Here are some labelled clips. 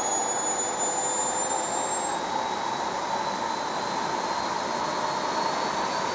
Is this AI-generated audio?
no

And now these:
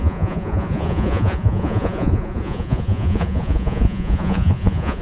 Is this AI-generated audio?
yes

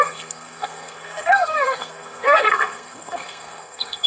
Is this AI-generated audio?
yes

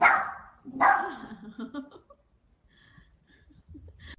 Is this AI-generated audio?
no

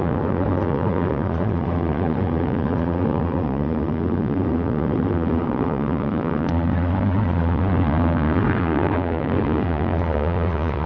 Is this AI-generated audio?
yes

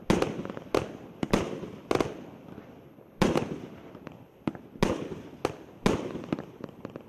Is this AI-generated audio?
no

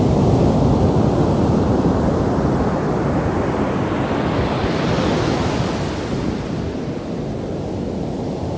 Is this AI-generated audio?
no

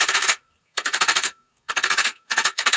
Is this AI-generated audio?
yes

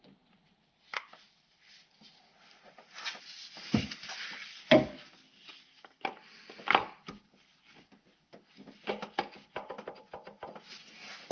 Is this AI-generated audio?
no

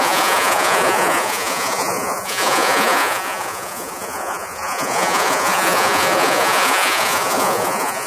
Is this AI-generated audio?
yes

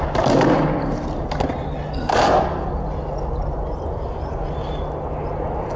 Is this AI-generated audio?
no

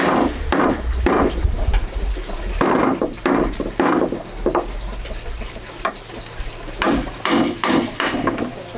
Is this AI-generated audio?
no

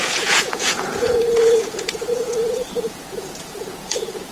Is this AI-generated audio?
yes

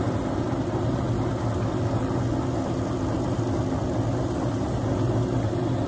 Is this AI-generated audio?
no